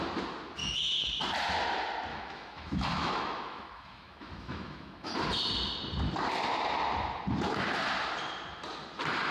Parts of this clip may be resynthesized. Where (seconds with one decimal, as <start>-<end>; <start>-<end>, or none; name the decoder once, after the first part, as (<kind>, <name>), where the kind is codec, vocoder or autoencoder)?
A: 0.6-1.1 (autoencoder, DAC-VAE); 2.1-5.1